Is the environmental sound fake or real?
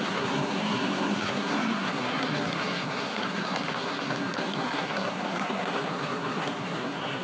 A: fake